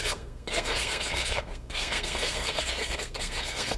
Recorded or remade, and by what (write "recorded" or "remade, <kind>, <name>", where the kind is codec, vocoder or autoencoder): remade, codec, SNAC